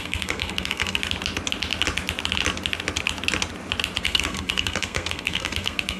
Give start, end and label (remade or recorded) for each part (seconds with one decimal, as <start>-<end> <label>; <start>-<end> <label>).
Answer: 0.0-1.0 remade; 1.0-4.0 recorded; 4.0-6.0 remade